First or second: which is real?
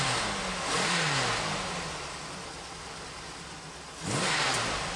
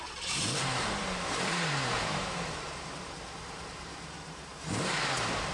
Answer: first